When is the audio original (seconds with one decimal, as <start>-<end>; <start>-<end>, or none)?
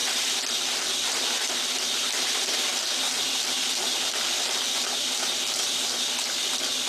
0.0-6.9